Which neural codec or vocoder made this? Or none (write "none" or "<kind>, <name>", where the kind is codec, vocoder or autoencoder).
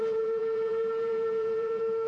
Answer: vocoder, Vocos